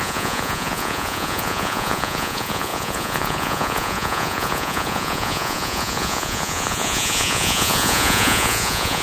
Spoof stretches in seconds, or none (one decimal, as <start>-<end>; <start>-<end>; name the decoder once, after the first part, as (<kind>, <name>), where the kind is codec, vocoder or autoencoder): 0.0-9.0 (vocoder, Vocos)